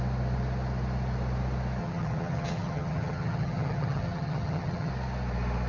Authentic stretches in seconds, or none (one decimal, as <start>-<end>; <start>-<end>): 0.0-1.8; 4.9-5.7

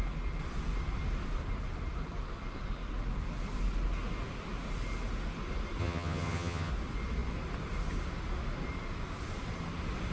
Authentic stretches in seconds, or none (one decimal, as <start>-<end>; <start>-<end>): 0.0-5.8; 6.7-10.1